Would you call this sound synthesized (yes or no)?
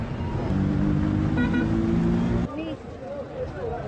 no